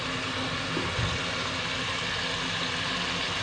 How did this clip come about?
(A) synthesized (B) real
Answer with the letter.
B